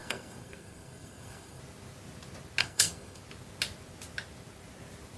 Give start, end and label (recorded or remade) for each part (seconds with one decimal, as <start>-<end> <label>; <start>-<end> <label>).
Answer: 0.0-1.6 remade; 1.6-2.6 recorded; 2.6-3.2 remade; 3.2-5.2 recorded